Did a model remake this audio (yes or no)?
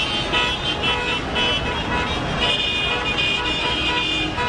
no